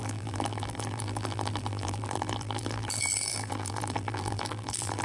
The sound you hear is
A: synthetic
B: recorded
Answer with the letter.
A